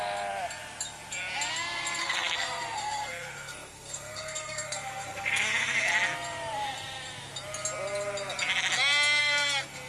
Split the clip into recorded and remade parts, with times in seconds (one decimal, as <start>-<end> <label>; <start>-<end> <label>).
0.0-2.0 recorded; 2.0-5.9 remade; 5.9-9.2 recorded; 9.2-9.9 remade